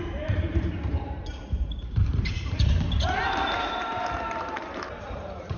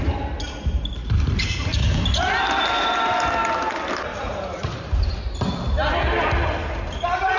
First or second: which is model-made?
first